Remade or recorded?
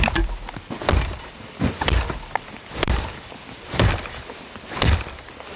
recorded